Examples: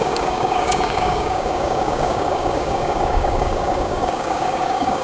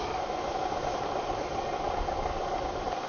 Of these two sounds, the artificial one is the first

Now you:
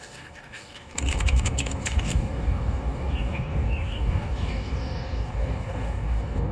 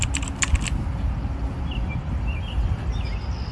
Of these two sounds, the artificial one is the first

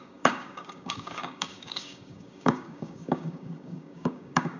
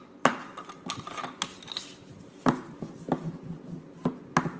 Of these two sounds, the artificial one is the first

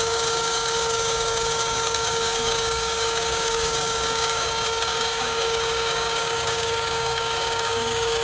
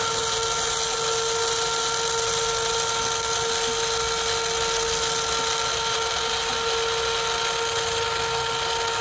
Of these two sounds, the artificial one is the first